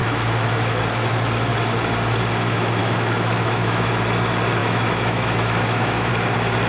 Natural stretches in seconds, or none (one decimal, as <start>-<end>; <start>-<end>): 0.8-2.8; 3.9-4.6; 6.1-6.7